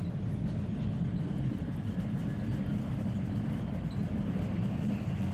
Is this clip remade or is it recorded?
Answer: recorded